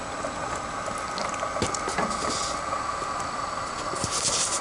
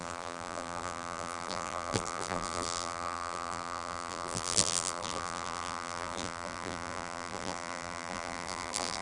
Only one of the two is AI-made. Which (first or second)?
second